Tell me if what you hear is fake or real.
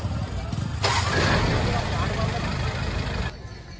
real